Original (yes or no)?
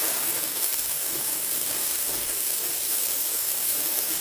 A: no